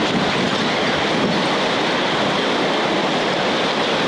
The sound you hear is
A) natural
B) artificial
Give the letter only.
A